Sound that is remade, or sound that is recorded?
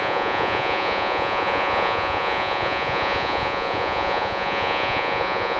remade